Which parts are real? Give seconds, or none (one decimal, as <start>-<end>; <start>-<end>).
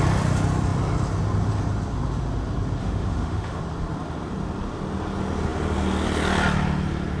0.0-2.8; 3.6-7.2